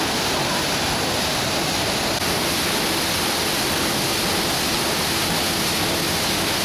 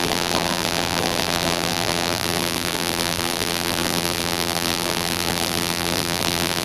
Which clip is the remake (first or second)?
second